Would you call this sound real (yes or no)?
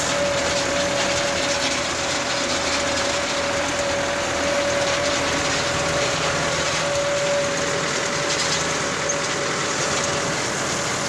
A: yes